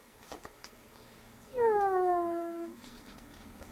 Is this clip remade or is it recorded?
remade